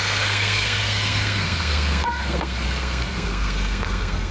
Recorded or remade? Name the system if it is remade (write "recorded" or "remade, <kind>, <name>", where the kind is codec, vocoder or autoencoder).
remade, codec, SNAC